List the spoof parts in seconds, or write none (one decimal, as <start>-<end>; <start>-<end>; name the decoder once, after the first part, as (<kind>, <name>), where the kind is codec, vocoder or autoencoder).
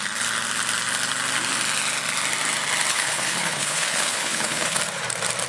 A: 2.9-4.8 (codec, HILCodec)